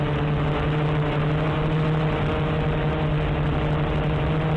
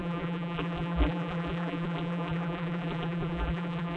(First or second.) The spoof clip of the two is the second